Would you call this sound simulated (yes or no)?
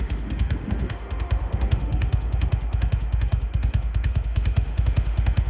yes